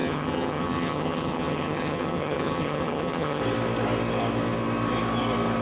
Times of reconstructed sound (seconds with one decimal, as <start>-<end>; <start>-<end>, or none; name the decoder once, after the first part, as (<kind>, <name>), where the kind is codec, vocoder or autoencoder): 0.0-3.4 (vocoder, HiFi-GAN)